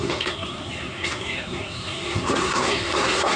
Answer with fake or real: fake